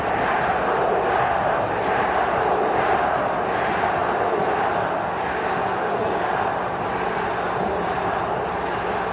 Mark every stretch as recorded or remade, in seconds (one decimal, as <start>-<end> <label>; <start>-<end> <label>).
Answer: 0.0-5.6 recorded; 5.6-6.2 remade; 6.2-9.1 recorded